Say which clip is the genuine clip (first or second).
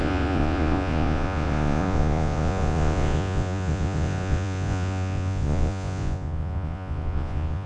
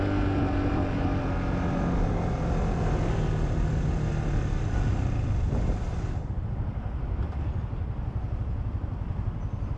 second